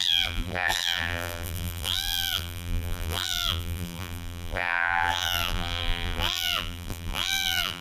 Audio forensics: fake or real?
fake